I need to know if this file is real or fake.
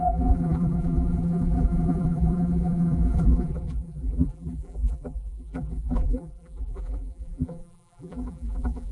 fake